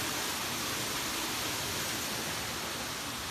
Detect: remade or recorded recorded